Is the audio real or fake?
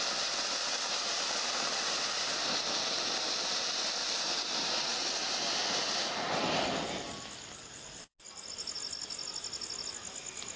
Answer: real